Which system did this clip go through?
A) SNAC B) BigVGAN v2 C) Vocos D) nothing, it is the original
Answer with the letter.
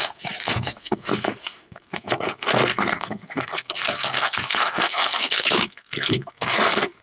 A